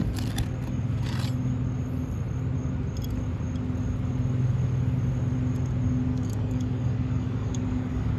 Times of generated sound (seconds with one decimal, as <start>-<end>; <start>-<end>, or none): 6.1-8.2